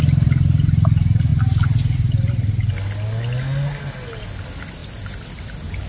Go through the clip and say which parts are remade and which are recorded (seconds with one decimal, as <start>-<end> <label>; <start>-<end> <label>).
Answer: 0.0-5.9 recorded